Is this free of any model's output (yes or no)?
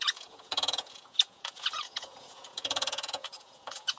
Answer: no